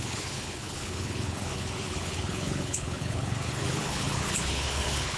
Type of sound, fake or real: fake